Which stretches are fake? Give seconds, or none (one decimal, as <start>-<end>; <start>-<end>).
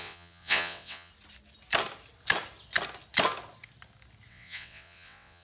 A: 0.0-1.1; 4.3-5.4